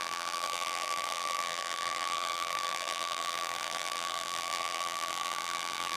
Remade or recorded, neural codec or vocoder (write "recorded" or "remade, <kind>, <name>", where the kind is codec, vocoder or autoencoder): remade, vocoder, BigVGAN v2